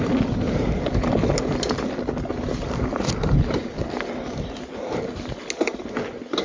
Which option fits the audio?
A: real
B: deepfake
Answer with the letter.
A